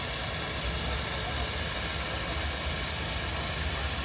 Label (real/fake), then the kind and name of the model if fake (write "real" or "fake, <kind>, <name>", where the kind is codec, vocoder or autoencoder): real